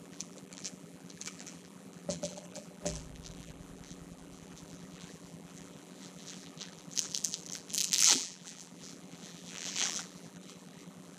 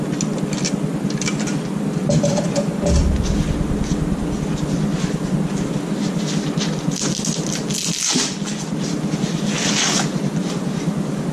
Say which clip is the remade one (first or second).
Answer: first